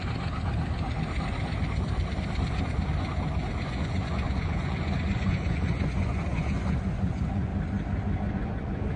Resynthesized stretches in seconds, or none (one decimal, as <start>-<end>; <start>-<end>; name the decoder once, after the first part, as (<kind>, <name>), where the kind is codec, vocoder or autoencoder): 3.6-7.5 (vocoder, Vocos); 8.3-9.0